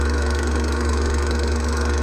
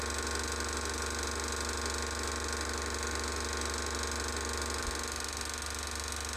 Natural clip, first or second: second